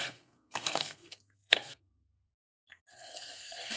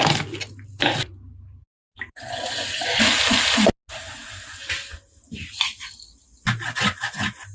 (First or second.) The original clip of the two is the second